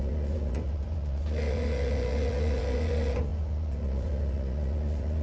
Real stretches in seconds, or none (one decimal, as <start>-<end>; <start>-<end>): none